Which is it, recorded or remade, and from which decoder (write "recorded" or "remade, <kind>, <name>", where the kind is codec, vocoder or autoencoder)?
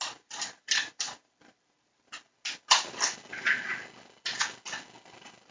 recorded